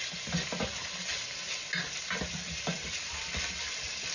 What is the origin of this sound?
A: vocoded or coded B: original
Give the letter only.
B